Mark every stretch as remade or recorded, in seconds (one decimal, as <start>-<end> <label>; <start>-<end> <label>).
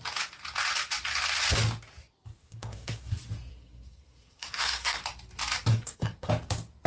0.0-2.4 recorded; 2.4-3.0 remade; 3.0-3.5 recorded; 3.5-5.0 remade; 5.0-5.7 recorded; 5.7-6.3 remade; 6.3-6.9 recorded